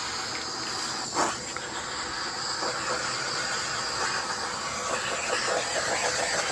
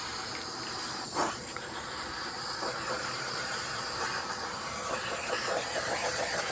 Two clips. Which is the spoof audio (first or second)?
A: second